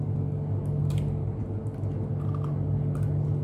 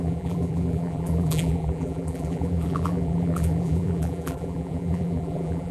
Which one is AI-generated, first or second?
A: second